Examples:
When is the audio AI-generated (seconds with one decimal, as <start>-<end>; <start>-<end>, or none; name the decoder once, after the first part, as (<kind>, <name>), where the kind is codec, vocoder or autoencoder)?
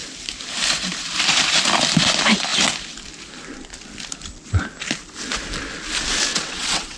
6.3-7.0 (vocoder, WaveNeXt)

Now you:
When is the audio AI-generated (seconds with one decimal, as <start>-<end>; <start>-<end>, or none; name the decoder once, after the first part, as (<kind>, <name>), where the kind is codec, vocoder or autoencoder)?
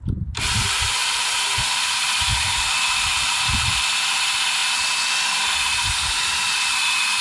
none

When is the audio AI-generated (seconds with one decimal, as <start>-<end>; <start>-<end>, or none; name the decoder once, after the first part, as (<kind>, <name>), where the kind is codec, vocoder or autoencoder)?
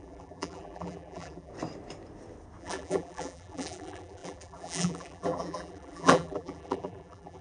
0.0-1.5 (vocoder, BigVGAN v2); 2.6-7.4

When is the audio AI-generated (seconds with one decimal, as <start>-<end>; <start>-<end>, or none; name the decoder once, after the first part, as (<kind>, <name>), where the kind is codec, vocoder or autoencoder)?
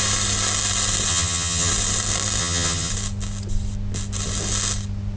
1.1-1.7 (vocoder, HiFi-GAN); 2.4-2.9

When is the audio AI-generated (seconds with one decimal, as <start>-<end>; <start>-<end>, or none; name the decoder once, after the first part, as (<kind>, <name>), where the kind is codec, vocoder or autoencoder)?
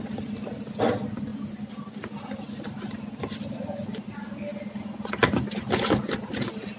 none